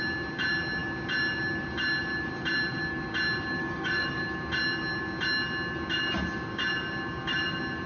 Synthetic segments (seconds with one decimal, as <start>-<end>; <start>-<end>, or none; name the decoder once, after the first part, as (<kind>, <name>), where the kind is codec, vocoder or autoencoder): 3.6-4.2 (codec, DAC)